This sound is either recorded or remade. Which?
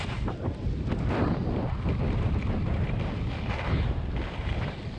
recorded